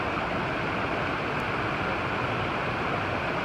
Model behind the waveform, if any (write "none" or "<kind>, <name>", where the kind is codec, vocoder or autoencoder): none